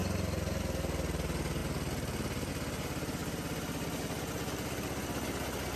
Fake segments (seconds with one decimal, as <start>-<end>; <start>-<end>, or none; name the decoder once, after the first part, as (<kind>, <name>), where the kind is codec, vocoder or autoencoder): none